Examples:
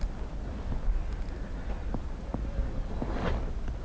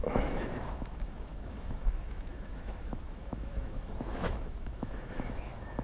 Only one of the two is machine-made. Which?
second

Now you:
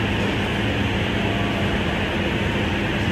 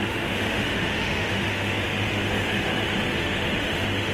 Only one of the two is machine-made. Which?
second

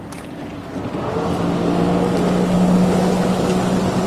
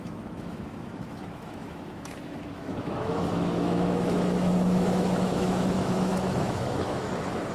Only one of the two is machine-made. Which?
second